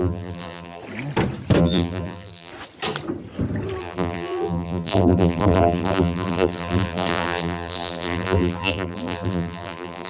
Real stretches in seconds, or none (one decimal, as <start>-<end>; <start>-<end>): 0.8-1.6; 2.5-3.8